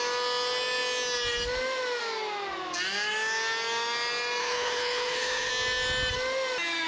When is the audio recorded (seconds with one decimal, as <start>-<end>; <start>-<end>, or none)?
0.0-4.4; 5.5-6.9